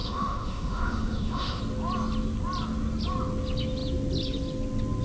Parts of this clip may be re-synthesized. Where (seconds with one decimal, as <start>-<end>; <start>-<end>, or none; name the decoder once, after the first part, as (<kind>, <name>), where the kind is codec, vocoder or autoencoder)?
0.0-1.6 (autoencoder, DAC-VAE)